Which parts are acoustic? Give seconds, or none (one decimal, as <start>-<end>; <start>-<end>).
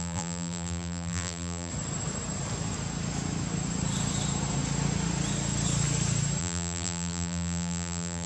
1.7-6.4